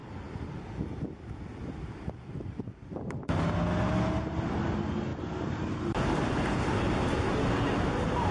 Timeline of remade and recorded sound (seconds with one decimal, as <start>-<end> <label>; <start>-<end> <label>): 0.0-1.1 remade; 1.1-1.5 recorded; 1.5-2.8 remade; 2.8-8.3 recorded